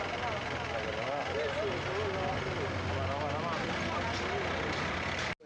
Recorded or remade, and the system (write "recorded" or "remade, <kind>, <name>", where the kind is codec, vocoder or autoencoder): recorded